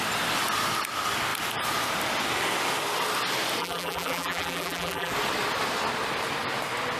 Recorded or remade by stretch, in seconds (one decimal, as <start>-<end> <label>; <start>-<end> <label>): 0.0-3.6 recorded; 3.6-5.1 remade; 5.1-7.0 recorded